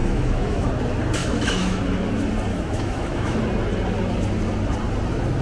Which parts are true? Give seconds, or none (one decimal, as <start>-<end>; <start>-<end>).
0.7-1.2; 1.8-2.5; 3.4-5.4